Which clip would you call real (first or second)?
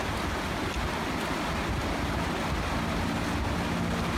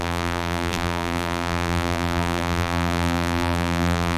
first